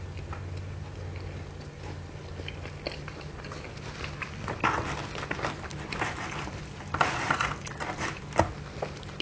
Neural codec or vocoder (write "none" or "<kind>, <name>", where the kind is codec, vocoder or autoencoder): none